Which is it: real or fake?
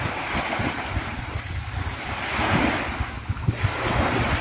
real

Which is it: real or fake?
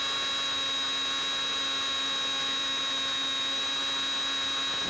real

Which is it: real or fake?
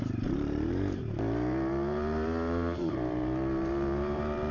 fake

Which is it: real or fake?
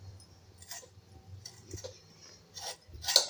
real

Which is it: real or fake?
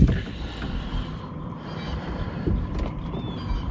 real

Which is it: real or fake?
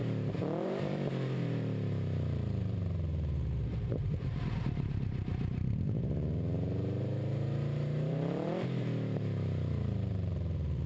fake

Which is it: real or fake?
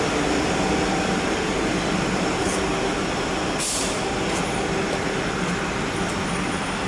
real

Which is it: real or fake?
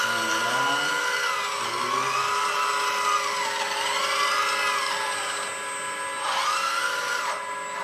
real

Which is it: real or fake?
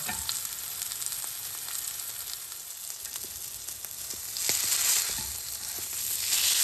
real